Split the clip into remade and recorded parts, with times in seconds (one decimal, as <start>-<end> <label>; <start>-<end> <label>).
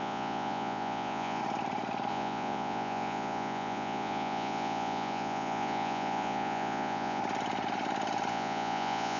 0.0-1.4 remade; 1.4-2.1 recorded; 2.1-7.2 remade; 7.2-8.3 recorded; 8.3-9.2 remade